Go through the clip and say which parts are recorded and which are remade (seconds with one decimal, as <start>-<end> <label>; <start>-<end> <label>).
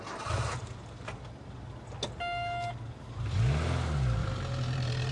0.0-4.2 recorded; 4.2-5.1 remade